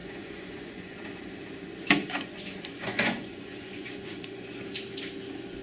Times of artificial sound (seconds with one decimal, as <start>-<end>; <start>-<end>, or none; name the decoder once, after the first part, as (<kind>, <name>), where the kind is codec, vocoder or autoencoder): 0.0-1.5 (vocoder, Vocos); 2.0-4.6